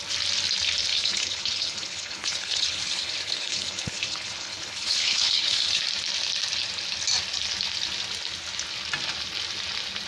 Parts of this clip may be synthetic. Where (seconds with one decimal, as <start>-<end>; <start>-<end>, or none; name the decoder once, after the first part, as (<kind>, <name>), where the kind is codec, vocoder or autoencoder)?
0.9-5.8 (codec, HILCodec)